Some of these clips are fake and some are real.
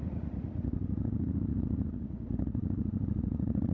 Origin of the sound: fake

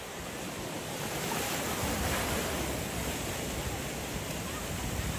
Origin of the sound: real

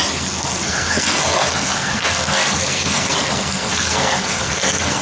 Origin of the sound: fake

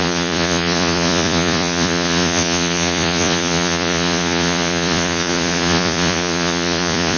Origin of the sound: fake